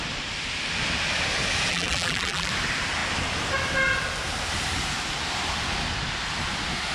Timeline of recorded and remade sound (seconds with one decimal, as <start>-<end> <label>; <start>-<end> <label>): 0.0-1.7 recorded; 1.7-2.5 remade; 2.5-6.9 recorded